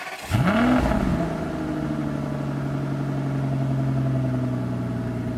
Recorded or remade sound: recorded